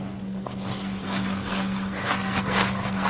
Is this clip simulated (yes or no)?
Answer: yes